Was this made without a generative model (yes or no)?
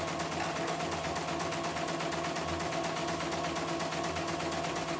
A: yes